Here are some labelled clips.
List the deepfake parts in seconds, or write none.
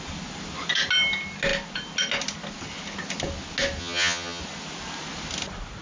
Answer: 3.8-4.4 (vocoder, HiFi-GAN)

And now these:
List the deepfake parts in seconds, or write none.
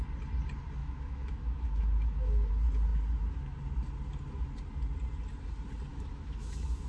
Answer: 0.8-2.5 (autoencoder, DAC-VAE); 5.9-6.9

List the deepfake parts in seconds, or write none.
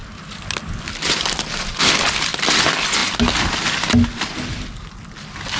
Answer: none